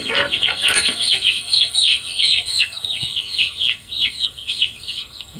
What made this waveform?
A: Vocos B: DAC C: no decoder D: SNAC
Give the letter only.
D